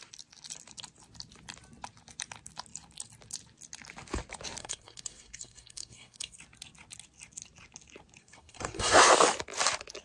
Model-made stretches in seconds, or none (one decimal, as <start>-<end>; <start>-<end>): 4.6-6.4; 8.2-9.1